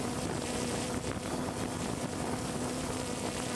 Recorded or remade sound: recorded